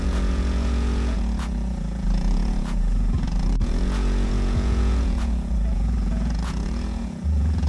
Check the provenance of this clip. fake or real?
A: fake